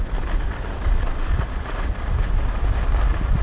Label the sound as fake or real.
real